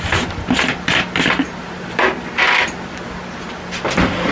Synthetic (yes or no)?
no